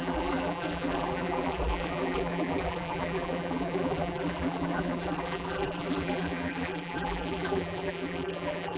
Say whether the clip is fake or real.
fake